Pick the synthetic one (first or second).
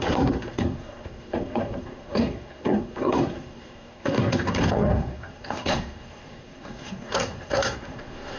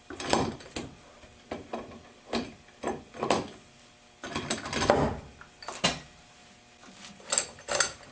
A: first